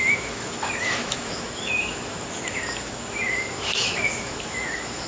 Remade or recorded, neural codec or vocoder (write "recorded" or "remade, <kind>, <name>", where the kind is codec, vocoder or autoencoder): remade, autoencoder, DAC-VAE